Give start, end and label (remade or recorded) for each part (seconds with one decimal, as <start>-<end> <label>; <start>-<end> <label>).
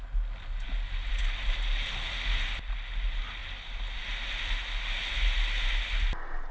0.0-6.5 recorded